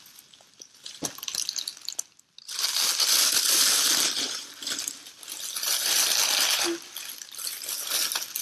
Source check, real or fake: real